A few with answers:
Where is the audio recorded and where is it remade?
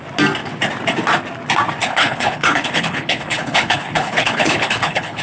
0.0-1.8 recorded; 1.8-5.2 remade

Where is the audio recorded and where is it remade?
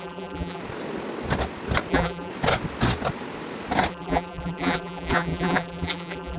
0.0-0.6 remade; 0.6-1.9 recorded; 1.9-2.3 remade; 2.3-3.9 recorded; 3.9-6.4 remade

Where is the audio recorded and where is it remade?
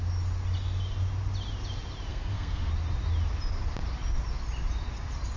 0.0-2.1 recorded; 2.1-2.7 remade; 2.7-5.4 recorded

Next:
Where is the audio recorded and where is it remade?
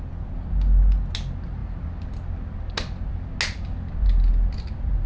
0.0-5.1 recorded